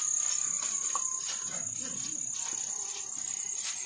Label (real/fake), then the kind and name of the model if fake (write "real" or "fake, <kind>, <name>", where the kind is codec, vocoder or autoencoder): real